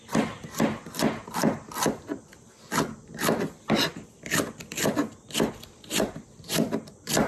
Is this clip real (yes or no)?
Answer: no